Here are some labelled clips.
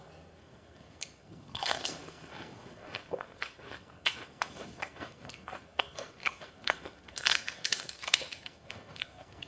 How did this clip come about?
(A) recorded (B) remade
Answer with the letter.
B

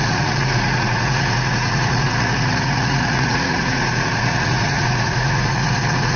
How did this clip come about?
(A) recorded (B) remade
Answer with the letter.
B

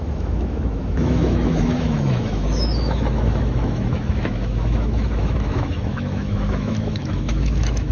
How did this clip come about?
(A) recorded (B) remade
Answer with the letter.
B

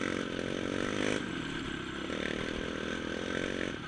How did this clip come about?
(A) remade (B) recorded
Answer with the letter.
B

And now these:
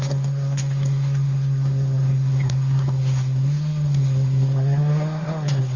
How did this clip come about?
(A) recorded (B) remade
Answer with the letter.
B